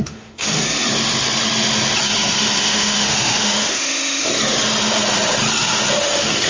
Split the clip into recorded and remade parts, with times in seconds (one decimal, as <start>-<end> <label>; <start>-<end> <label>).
0.0-0.6 remade; 0.6-2.6 recorded; 2.6-4.3 remade; 4.3-6.0 recorded; 6.0-6.5 remade